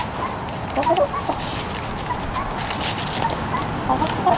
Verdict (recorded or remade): recorded